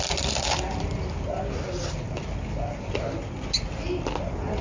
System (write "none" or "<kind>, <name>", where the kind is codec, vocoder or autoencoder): none